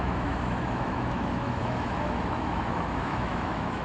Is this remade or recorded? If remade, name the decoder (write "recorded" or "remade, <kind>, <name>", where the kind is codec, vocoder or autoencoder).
remade, autoencoder, DAC-VAE